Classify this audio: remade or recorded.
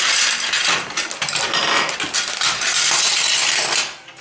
recorded